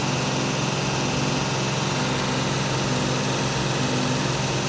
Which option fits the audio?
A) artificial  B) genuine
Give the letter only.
B